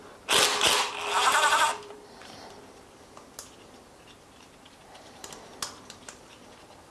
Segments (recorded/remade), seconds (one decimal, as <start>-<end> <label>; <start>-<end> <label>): 0.0-1.7 recorded; 1.7-2.5 remade; 2.5-6.9 recorded